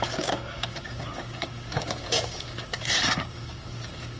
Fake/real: fake